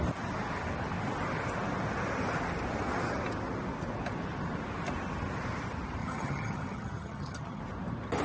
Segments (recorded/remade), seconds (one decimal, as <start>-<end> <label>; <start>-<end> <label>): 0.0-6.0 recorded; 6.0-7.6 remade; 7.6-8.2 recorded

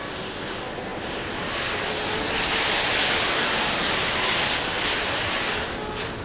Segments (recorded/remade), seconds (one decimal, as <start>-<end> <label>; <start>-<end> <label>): 0.0-6.2 recorded

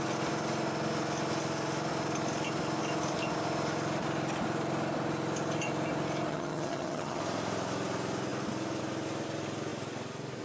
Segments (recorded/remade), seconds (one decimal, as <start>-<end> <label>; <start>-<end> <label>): 0.0-6.3 recorded; 6.3-7.2 remade; 7.2-10.4 recorded

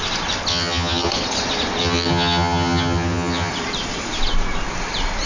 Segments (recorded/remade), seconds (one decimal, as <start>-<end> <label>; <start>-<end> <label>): 0.0-0.5 recorded; 0.5-1.1 remade; 1.1-1.8 recorded; 1.8-3.5 remade; 3.5-5.3 recorded

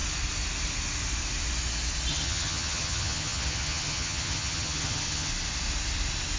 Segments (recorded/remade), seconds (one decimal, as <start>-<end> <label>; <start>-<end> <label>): 0.0-2.1 recorded; 2.1-5.3 remade; 5.3-6.4 recorded

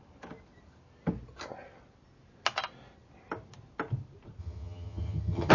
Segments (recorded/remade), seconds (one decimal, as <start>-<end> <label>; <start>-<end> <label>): 0.0-4.4 recorded; 4.4-5.5 remade